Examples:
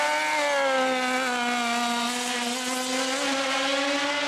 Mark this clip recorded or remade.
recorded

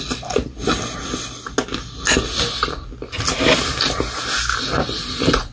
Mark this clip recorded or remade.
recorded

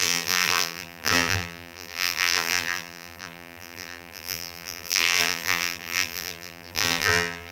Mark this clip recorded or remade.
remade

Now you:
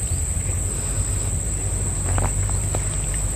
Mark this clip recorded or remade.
recorded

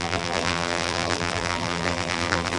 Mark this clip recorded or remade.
remade